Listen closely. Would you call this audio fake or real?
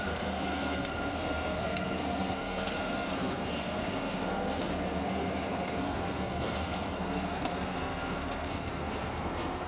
fake